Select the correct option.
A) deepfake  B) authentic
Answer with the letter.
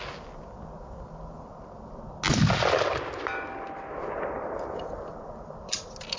B